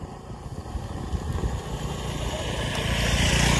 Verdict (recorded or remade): recorded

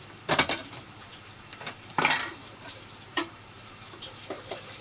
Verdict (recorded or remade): remade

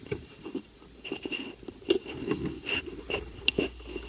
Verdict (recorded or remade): recorded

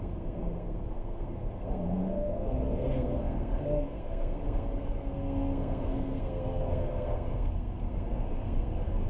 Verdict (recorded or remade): remade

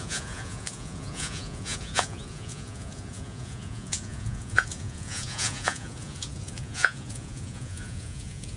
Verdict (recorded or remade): remade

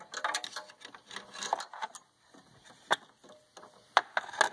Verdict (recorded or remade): recorded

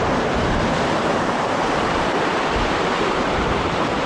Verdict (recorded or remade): remade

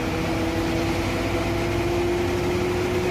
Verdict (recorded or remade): recorded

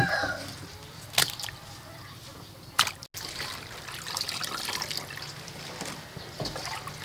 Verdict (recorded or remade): recorded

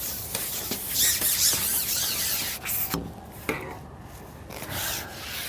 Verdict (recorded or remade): recorded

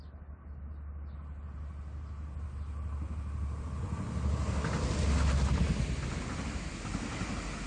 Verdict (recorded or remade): recorded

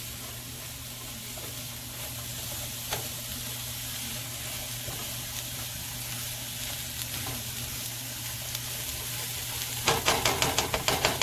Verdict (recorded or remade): recorded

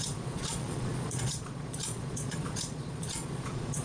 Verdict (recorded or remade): remade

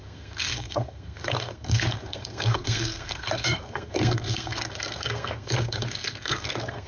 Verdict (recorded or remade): remade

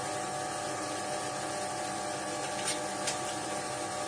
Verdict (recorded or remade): recorded